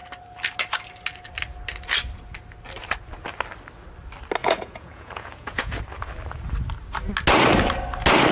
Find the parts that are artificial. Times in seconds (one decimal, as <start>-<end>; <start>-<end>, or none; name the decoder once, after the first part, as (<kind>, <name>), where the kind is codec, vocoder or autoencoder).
4.4-5.8 (vocoder, Vocos)